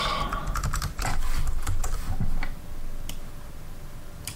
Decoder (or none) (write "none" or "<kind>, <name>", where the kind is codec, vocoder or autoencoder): none